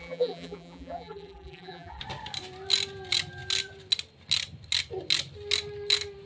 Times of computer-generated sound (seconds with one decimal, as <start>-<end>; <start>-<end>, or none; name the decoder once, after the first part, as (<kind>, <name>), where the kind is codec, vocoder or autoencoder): 0.0-2.0 (vocoder, BigVGAN v2)